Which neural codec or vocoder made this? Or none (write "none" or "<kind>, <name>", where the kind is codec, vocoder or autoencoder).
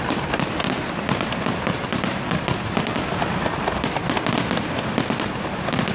none